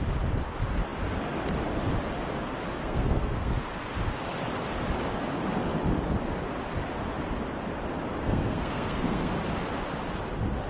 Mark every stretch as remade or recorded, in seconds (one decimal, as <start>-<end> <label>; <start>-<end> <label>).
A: 0.0-2.8 recorded; 2.8-3.5 remade; 3.5-8.2 recorded; 8.2-9.3 remade; 9.3-10.7 recorded